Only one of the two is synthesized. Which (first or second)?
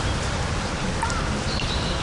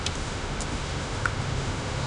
second